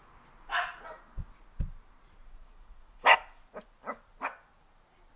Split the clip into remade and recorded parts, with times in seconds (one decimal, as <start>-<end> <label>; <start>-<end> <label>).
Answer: 0.0-2.2 recorded; 2.2-3.6 remade; 3.6-5.2 recorded